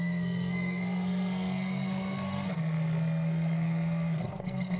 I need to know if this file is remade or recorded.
remade